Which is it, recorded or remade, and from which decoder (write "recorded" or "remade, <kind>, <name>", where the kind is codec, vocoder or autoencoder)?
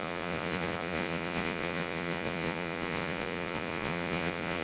remade, vocoder, Vocos